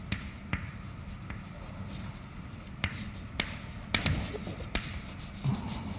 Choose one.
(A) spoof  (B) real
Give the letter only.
B